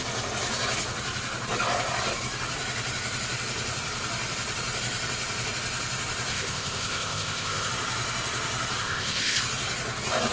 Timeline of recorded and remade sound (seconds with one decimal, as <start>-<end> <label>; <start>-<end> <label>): 0.0-6.3 recorded; 6.3-7.7 remade; 7.7-8.8 recorded; 8.8-9.4 remade; 9.4-10.3 recorded